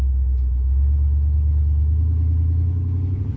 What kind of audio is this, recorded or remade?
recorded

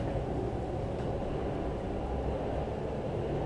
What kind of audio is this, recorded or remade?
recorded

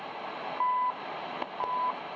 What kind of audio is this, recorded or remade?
recorded